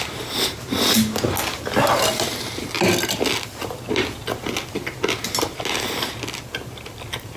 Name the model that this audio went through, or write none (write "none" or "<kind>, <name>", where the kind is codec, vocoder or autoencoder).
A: none